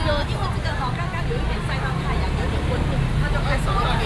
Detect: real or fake real